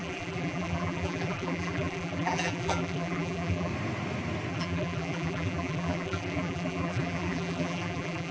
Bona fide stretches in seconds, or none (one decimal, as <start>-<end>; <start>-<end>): 3.7-4.5